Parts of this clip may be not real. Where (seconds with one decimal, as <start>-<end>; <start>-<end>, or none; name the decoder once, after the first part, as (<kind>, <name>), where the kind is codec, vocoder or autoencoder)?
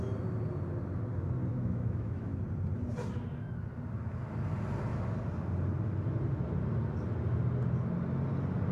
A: 1.5-2.4 (autoencoder, DAC-VAE)